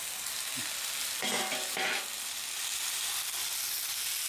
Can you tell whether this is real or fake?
real